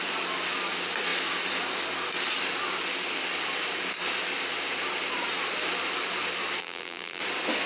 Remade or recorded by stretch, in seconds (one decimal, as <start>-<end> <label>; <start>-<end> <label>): 0.0-6.6 recorded; 6.6-7.2 remade; 7.2-7.7 recorded